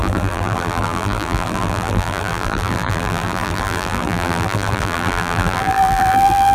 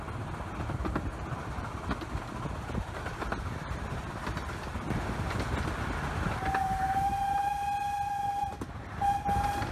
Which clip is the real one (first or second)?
second